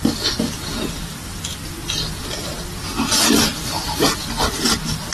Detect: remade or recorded recorded